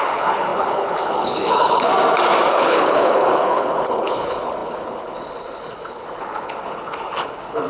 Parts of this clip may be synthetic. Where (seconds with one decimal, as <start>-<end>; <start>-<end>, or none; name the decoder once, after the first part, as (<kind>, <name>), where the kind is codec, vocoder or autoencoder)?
0.0-1.9 (codec, HILCodec); 2.5-7.7